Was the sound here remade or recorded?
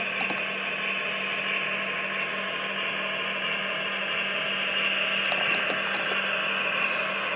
recorded